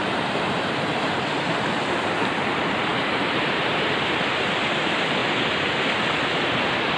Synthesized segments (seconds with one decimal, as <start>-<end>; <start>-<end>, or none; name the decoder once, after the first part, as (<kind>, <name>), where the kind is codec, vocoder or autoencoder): 0.0-5.2 (vocoder, BigVGAN v2); 6.6-7.0